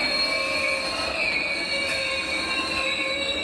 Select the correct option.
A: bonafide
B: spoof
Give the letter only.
A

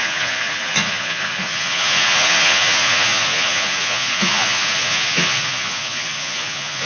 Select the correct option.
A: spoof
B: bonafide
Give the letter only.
A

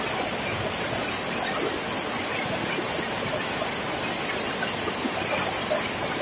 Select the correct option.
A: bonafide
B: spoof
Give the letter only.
A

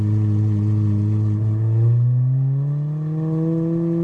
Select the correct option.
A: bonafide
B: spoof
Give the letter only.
A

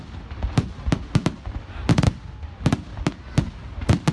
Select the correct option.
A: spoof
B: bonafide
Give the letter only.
B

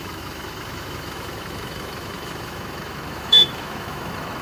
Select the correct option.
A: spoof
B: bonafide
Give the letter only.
A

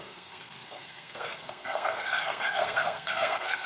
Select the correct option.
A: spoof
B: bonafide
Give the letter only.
A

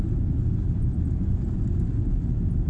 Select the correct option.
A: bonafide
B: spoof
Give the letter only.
A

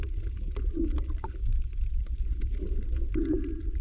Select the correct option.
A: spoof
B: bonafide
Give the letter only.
B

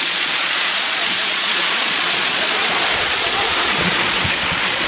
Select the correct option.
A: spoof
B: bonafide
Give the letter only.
A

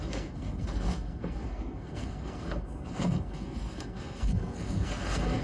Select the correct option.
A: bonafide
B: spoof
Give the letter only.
B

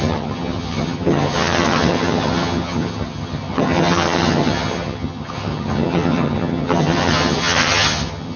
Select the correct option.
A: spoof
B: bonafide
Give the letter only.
A